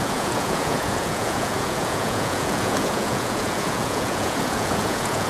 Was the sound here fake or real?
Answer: fake